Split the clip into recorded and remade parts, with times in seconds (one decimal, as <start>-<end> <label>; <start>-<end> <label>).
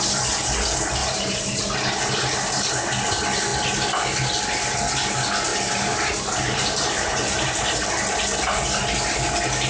0.0-1.0 recorded; 1.0-1.6 remade; 1.6-5.5 recorded; 5.5-7.9 remade; 7.9-9.7 recorded